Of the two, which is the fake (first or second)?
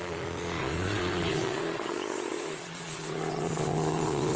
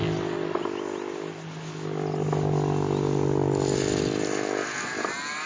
first